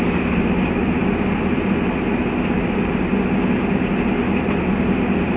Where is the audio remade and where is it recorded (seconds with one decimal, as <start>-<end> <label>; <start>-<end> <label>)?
0.0-5.4 recorded